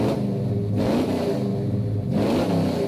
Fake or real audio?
real